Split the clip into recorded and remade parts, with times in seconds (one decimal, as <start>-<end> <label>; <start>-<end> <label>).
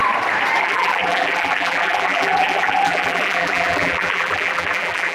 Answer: 0.0-0.6 recorded; 0.6-5.1 remade